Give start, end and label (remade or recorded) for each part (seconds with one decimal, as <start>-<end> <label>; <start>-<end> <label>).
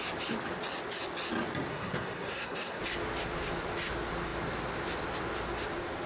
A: 0.0-1.7 recorded; 1.7-2.8 remade; 2.8-6.1 recorded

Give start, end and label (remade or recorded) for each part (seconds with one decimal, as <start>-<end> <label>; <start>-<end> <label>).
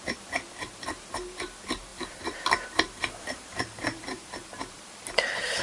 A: 0.0-1.9 recorded; 1.9-5.6 remade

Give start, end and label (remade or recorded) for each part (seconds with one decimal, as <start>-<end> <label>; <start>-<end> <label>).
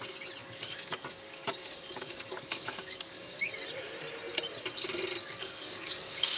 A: 0.0-0.4 recorded; 0.4-3.5 remade; 3.5-5.2 recorded; 5.2-6.4 remade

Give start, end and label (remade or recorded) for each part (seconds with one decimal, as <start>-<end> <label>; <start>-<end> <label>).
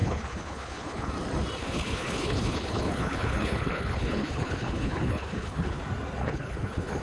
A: 0.0-1.1 remade; 1.1-1.6 recorded; 1.6-5.8 remade; 5.8-6.2 recorded; 6.2-7.0 remade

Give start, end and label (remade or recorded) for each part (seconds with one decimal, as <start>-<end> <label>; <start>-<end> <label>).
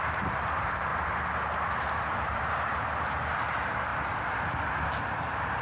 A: 0.0-0.9 remade; 0.9-1.7 recorded; 1.7-3.9 remade; 3.9-4.9 recorded; 4.9-5.6 remade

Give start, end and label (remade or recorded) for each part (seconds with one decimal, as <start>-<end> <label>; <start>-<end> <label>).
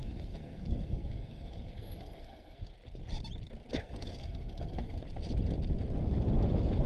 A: 0.0-2.6 remade; 2.6-3.7 recorded; 3.7-5.0 remade; 5.0-6.9 recorded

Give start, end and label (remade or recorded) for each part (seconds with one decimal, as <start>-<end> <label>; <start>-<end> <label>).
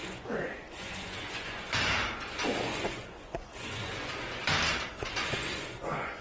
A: 0.0-4.4 remade; 4.4-4.9 recorded; 4.9-6.2 remade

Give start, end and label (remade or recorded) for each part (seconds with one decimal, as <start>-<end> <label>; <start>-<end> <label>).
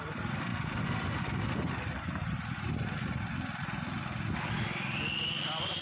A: 0.0-5.8 recorded